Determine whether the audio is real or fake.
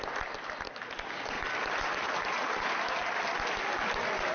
real